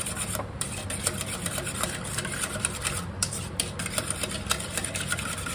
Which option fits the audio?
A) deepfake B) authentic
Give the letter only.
A